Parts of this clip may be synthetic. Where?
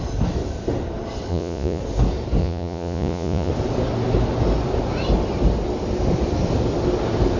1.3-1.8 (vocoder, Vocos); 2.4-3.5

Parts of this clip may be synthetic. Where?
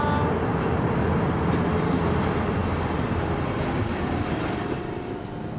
none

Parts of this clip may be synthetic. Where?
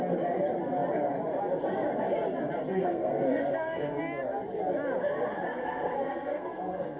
2.7-4.0 (codec, SNAC); 5.6-7.0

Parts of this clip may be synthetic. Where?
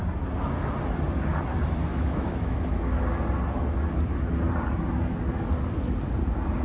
1.9-2.8 (autoencoder, DAC-VAE)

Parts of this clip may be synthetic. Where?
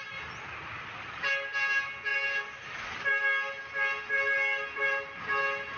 2.1-3.0 (vocoder, BigVGAN v2)